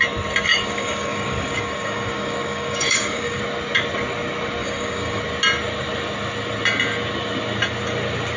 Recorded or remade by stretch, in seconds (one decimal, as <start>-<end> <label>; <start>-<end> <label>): 0.0-0.5 recorded; 0.5-3.4 remade; 3.4-4.6 recorded; 4.6-5.2 remade; 5.2-8.4 recorded

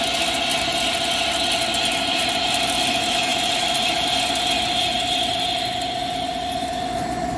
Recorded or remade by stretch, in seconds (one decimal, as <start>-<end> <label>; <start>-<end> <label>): 0.0-7.4 recorded

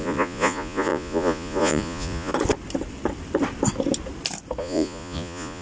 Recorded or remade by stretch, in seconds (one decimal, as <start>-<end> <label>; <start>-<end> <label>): 0.0-2.3 remade; 2.3-4.6 recorded; 4.6-5.6 remade